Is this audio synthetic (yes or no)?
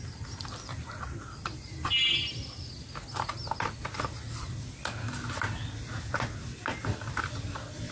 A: no